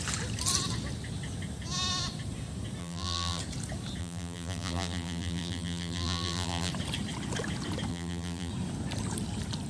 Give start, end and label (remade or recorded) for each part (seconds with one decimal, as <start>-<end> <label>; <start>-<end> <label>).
0.0-2.8 recorded; 2.8-3.4 remade; 3.4-4.0 recorded; 4.0-6.7 remade; 6.7-7.9 recorded; 7.9-8.5 remade; 8.5-9.7 recorded